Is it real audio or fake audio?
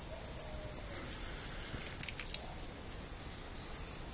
real